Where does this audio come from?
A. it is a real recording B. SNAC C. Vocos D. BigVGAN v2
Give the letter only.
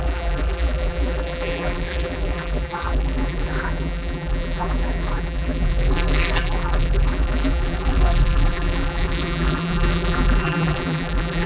D